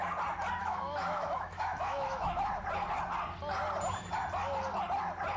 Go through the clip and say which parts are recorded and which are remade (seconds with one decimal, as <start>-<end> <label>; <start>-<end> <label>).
0.0-0.6 recorded; 0.6-2.5 remade; 2.5-5.4 recorded

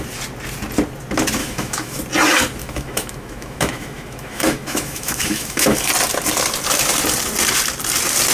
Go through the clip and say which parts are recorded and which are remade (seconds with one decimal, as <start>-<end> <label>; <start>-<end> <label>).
0.0-1.4 recorded; 1.4-2.0 remade; 2.0-2.6 recorded; 2.6-5.9 remade; 5.9-8.3 recorded

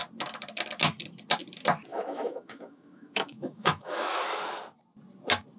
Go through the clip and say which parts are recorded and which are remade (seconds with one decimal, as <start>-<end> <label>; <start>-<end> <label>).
0.0-1.9 recorded; 1.9-4.4 remade; 4.4-5.6 recorded